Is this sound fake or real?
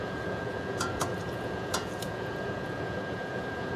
fake